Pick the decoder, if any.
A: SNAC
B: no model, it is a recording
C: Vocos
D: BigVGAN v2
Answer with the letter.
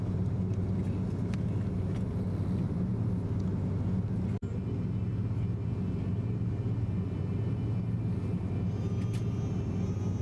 B